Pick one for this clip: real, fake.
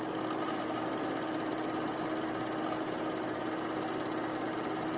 real